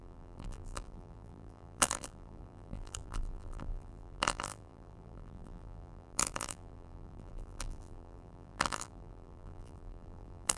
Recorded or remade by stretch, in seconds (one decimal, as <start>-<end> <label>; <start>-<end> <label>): 0.0-10.6 remade